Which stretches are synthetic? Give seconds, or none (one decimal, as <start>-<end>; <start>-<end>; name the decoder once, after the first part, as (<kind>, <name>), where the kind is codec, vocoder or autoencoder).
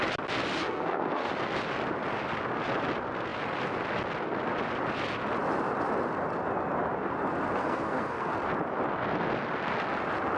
0.6-1.3 (codec, SNAC); 7.6-8.3